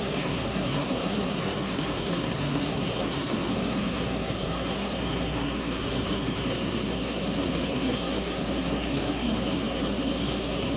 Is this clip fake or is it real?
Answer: fake